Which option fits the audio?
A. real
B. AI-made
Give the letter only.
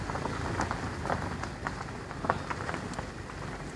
A